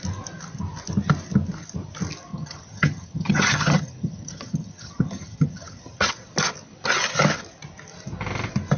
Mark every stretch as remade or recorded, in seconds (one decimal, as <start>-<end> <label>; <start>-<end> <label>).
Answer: 0.0-2.3 recorded; 2.3-6.1 remade; 6.1-8.8 recorded